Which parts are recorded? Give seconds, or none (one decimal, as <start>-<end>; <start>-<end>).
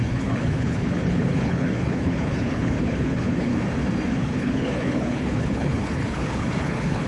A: 3.5-4.1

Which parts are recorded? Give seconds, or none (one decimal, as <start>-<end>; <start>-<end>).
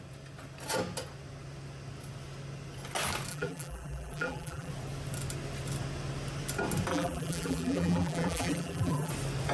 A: 0.0-3.3; 4.7-6.9; 9.1-9.5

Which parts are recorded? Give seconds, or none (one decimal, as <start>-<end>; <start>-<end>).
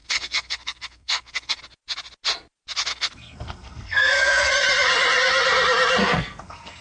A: 1.6-2.9; 4.5-6.0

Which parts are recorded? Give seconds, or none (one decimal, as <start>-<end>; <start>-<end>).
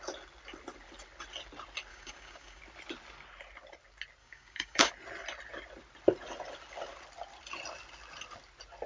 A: 0.0-1.9; 2.6-4.2; 4.9-8.9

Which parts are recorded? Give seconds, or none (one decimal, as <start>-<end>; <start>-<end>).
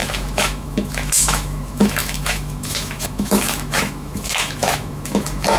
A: none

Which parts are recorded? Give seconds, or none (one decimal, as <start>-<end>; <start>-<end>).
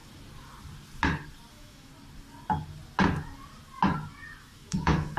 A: 0.0-1.5; 1.9-4.4